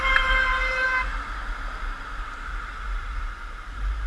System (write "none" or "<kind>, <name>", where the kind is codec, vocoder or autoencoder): vocoder, BigVGAN v2